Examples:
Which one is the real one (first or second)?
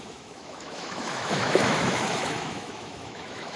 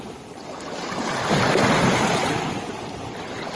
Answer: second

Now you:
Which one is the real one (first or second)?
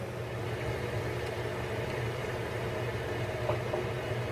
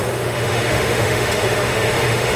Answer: first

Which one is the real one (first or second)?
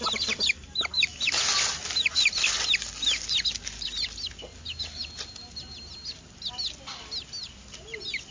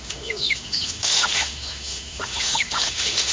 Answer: first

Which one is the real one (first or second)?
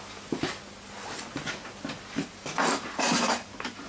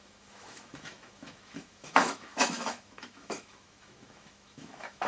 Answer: first